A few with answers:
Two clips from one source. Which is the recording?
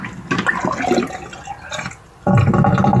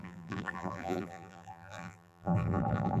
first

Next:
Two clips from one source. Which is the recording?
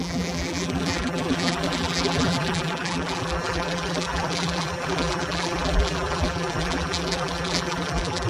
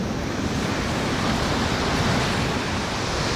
second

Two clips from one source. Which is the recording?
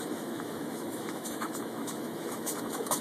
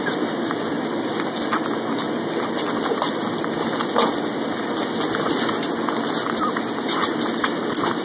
second